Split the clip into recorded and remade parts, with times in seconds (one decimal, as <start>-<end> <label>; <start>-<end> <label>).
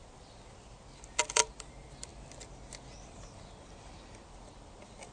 0.0-5.1 recorded